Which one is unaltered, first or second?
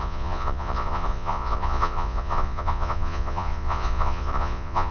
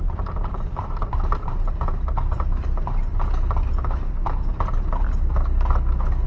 second